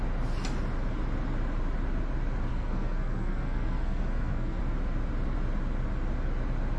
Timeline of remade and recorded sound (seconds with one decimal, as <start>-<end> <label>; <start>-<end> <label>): 0.0-2.5 recorded; 2.5-4.6 remade; 4.6-6.8 recorded